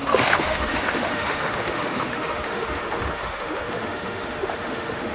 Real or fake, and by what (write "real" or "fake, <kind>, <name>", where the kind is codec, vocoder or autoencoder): fake, autoencoder, DAC-VAE